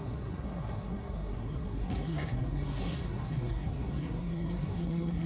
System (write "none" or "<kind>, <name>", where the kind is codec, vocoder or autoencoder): codec, SNAC